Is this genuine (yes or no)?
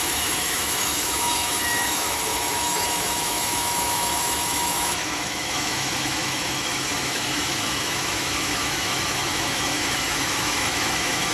no